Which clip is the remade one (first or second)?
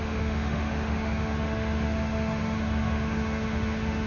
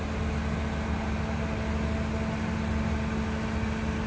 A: first